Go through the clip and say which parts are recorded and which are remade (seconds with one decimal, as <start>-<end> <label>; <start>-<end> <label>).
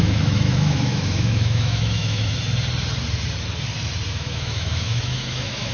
0.0-2.3 remade; 2.3-4.1 recorded; 4.1-5.7 remade